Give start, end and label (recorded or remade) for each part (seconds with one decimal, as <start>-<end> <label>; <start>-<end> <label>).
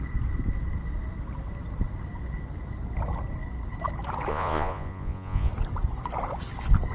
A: 0.0-4.3 recorded; 4.3-5.5 remade; 5.5-6.9 recorded